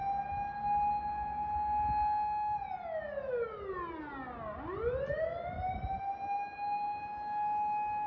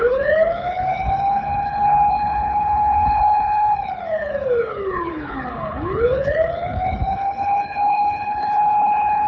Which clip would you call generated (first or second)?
second